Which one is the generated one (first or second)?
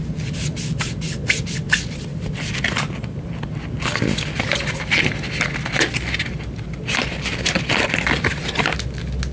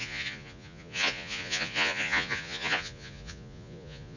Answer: second